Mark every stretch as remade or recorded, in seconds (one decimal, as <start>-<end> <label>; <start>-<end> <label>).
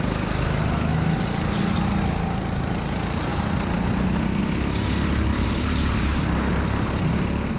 0.0-0.9 recorded; 0.9-1.6 remade; 1.6-5.3 recorded; 5.3-6.3 remade; 6.3-7.6 recorded